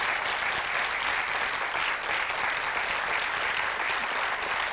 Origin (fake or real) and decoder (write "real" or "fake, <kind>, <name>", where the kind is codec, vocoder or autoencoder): real